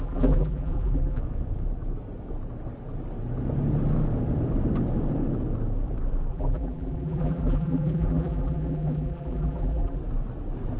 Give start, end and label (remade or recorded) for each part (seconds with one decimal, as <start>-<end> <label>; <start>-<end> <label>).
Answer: 0.0-1.2 remade; 1.2-6.3 recorded; 6.3-10.0 remade; 10.0-10.8 recorded

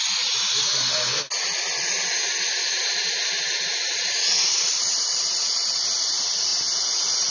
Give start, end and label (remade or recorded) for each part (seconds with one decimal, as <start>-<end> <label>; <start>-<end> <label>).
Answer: 0.0-7.3 recorded

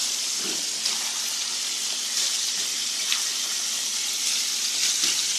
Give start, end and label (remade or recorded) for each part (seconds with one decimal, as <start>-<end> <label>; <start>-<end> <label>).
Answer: 0.0-3.2 remade; 3.2-3.9 recorded; 3.9-4.9 remade; 4.9-5.4 recorded

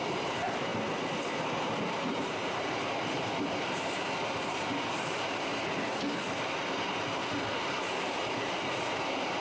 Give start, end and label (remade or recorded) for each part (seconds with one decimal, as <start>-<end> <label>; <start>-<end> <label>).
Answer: 0.0-0.7 remade; 0.7-1.4 recorded; 1.4-5.5 remade; 5.5-7.0 recorded; 7.0-9.4 remade

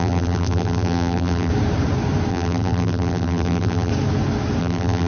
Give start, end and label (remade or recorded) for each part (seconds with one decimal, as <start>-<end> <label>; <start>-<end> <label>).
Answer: 0.0-1.5 remade; 1.5-2.3 recorded; 2.3-3.9 remade; 3.9-4.6 recorded; 4.6-5.1 remade

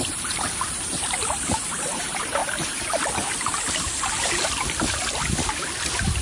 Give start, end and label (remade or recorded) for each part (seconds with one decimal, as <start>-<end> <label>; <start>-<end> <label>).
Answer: 0.0-2.4 remade; 2.4-6.2 recorded

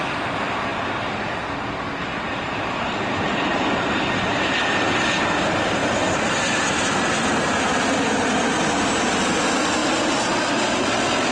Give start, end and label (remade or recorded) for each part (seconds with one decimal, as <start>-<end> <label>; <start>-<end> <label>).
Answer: 0.0-11.3 recorded

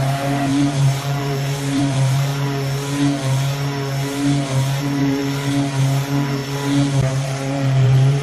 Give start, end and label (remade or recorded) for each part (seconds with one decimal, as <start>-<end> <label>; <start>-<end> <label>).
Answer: 0.0-2.3 remade; 2.3-4.8 recorded; 4.8-5.2 remade; 5.2-5.8 recorded; 5.8-6.4 remade; 6.4-7.1 recorded; 7.1-8.2 remade